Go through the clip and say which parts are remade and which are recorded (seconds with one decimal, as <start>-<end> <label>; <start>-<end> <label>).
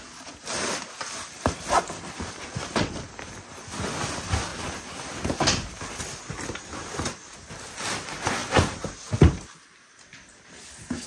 0.0-11.1 recorded